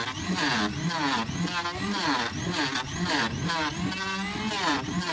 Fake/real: real